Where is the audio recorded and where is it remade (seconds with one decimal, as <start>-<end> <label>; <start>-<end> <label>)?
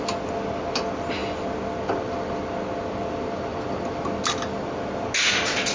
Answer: 0.0-5.7 recorded